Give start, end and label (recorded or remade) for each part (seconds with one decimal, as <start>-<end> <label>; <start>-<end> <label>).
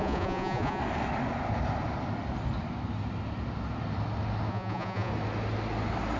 0.0-0.8 remade; 0.8-4.5 recorded; 4.5-5.1 remade; 5.1-6.2 recorded